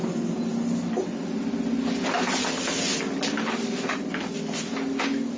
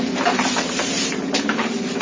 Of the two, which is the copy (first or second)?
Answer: second